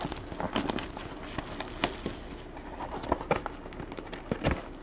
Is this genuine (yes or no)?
yes